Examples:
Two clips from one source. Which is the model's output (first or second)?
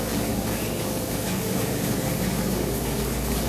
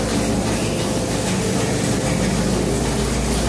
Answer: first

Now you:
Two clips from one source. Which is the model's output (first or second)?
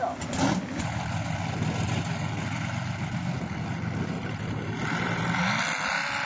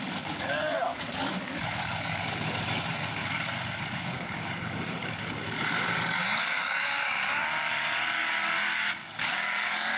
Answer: second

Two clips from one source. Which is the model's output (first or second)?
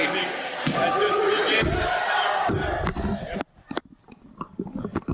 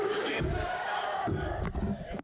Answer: second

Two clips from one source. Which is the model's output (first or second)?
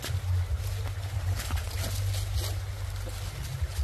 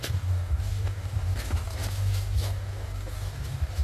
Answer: second